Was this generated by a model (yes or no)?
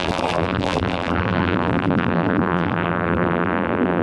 yes